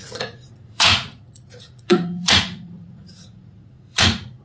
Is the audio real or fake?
fake